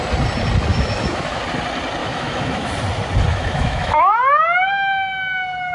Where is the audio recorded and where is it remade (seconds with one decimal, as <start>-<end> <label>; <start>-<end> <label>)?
0.0-0.7 recorded; 0.7-1.4 remade; 1.4-2.0 recorded; 2.0-2.7 remade; 2.7-3.3 recorded; 3.3-4.0 remade; 4.0-5.7 recorded